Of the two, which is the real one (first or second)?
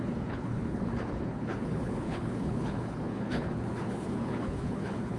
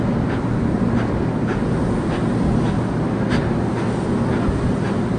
second